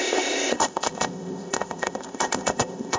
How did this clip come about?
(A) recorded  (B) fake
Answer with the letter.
B